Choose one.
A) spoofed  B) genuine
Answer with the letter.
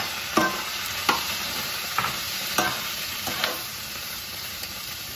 A